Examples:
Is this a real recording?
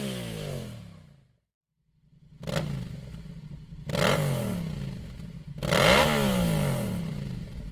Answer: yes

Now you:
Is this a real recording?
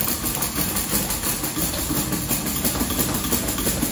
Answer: yes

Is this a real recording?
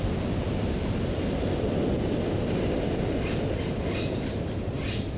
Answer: yes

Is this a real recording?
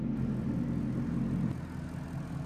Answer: yes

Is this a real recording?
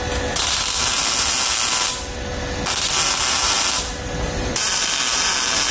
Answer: yes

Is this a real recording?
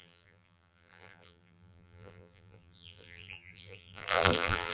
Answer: no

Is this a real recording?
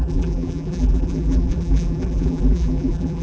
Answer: no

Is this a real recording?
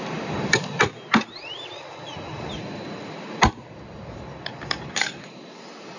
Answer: no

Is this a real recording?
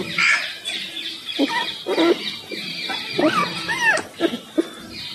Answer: yes